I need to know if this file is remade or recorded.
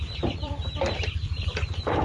remade